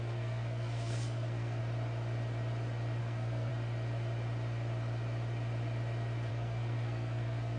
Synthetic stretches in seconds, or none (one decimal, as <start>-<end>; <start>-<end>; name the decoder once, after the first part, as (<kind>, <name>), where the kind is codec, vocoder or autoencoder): 0.0-1.6 (codec, SNAC); 3.0-3.5; 6.3-7.6

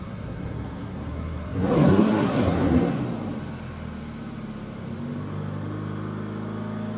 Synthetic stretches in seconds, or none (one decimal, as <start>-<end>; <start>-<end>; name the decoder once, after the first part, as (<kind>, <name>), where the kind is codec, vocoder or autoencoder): 0.0-3.0 (codec, SNAC)

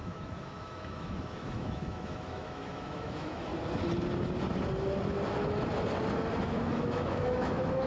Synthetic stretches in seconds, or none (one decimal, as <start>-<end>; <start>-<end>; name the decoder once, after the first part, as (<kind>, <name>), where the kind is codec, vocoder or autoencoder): 0.0-3.5 (autoencoder, DAC-VAE); 6.4-7.9

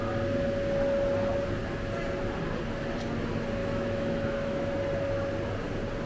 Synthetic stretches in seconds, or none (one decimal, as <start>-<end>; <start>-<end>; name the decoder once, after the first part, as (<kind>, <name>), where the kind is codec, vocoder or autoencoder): 3.6-4.7 (autoencoder, DAC-VAE)